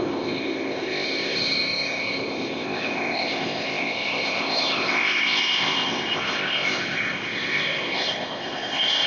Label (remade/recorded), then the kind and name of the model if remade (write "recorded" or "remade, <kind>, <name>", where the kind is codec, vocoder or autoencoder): remade, codec, ZipCodec